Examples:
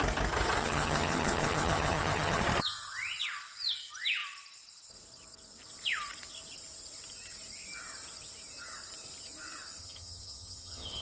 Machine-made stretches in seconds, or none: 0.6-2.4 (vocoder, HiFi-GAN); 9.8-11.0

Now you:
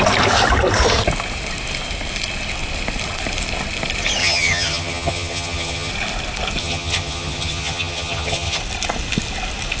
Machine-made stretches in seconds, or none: 4.2-5.9 (vocoder, HiFi-GAN); 6.6-8.6

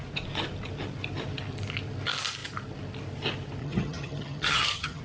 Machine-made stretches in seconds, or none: 3.6-5.0 (vocoder, HiFi-GAN)

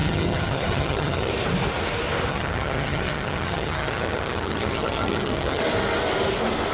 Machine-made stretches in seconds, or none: 0.0-1.3 (vocoder, HiFi-GAN); 2.3-5.6

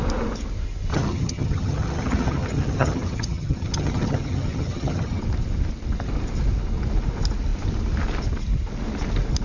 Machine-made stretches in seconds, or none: 0.9-5.2 (vocoder, HiFi-GAN)